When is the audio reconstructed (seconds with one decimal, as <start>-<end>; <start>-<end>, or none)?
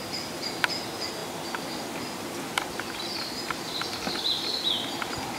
none